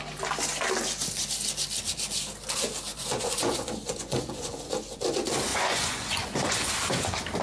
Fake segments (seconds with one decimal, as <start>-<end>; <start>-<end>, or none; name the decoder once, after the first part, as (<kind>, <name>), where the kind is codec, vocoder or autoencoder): 2.9-5.0 (vocoder, Vocos); 5.5-6.7